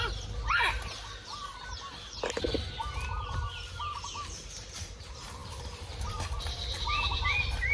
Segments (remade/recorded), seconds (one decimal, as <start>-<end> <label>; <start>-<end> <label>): 0.0-7.7 recorded